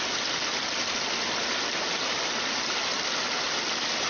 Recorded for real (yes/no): yes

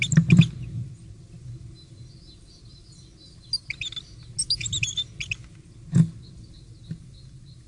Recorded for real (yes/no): yes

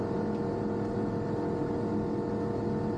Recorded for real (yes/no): yes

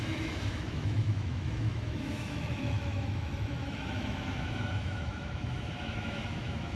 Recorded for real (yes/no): no